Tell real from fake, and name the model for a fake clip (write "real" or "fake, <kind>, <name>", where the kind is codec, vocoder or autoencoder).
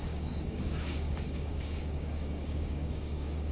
fake, codec, DAC